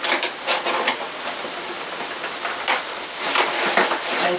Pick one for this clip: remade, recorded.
recorded